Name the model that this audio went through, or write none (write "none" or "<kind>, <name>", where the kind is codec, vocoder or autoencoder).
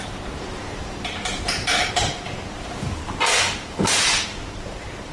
vocoder, BigVGAN v2